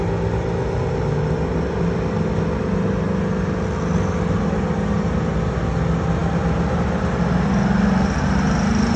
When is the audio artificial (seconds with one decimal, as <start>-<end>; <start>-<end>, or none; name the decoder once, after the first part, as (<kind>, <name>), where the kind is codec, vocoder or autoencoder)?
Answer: none